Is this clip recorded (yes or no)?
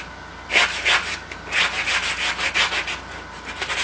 yes